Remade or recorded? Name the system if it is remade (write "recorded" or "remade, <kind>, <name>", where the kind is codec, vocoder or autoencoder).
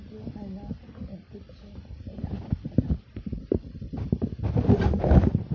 recorded